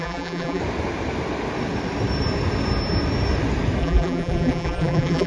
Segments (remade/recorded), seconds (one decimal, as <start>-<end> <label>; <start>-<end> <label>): 0.0-0.6 remade; 0.6-3.8 recorded; 3.8-5.3 remade